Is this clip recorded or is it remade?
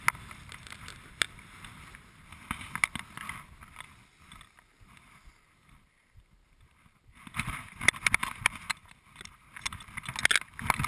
recorded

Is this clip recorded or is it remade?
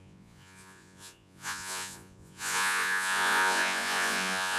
remade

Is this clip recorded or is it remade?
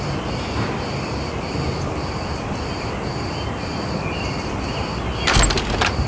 recorded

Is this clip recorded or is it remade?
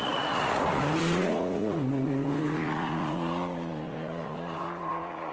remade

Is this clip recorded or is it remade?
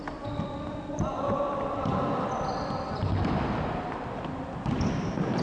recorded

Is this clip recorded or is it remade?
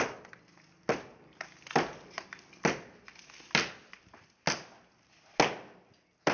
recorded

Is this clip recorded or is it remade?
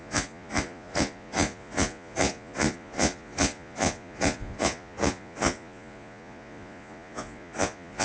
remade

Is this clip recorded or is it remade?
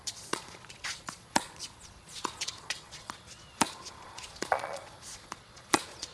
remade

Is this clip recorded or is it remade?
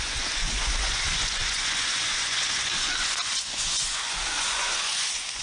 remade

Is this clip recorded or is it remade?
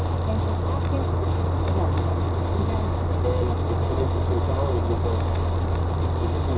recorded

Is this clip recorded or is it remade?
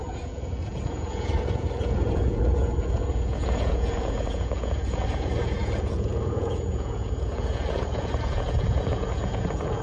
remade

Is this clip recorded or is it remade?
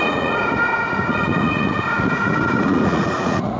remade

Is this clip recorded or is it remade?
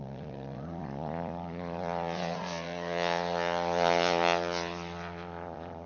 remade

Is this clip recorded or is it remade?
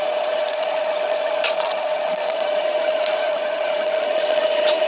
remade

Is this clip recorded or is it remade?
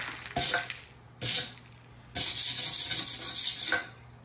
recorded